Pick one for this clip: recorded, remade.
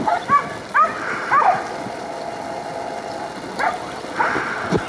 recorded